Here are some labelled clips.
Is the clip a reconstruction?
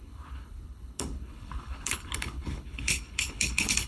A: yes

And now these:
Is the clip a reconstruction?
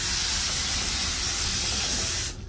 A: no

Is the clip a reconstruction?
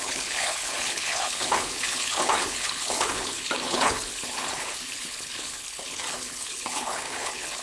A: yes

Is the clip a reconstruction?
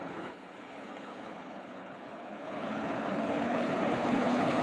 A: yes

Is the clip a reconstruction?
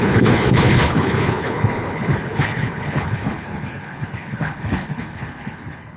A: yes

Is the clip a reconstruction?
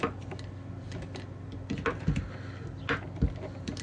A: no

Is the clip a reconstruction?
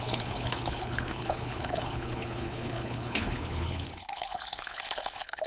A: yes